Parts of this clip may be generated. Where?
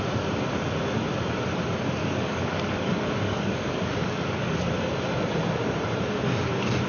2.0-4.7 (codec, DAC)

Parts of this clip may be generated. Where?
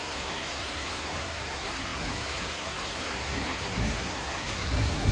0.0-5.1 (codec, SNAC)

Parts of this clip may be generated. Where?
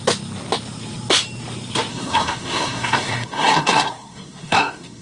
1.9-5.0 (codec, SNAC)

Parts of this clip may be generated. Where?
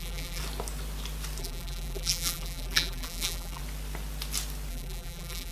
0.0-0.4 (vocoder, BigVGAN v2); 1.4-3.6; 4.7-5.5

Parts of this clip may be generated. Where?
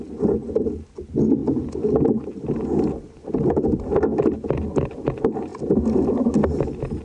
none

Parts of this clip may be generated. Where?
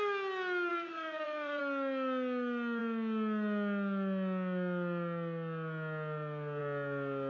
0.7-1.6 (vocoder, WaveNeXt)